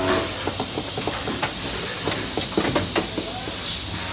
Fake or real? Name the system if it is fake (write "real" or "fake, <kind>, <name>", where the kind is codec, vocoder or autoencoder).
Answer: real